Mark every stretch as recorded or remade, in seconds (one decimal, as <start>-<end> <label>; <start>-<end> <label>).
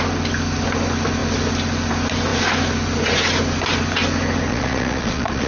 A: 0.0-4.5 recorded; 4.5-5.5 remade